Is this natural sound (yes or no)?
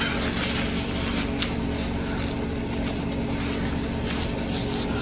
yes